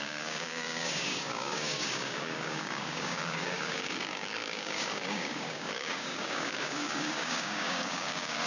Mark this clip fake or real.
fake